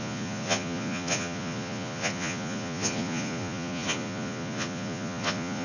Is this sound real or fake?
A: fake